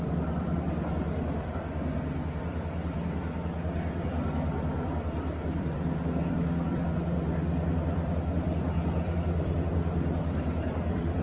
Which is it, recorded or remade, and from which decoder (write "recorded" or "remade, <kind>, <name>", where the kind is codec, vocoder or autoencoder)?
remade, vocoder, BigVGAN v2